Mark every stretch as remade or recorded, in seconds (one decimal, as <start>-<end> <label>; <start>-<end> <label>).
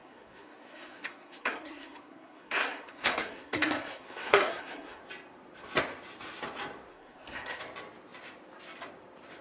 0.0-5.0 remade; 5.0-6.9 recorded; 6.9-7.6 remade; 7.6-9.4 recorded